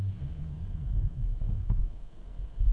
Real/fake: fake